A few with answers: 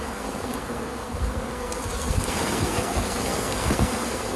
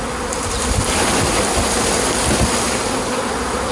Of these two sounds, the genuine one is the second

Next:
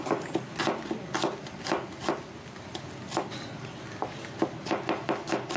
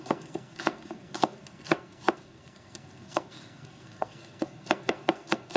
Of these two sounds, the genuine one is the first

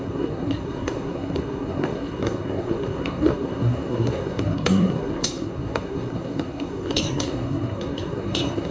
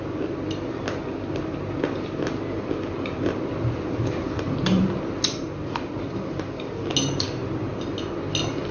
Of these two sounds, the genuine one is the second